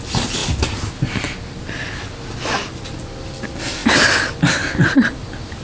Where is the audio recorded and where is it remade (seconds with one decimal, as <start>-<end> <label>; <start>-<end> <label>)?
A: 0.0-5.6 recorded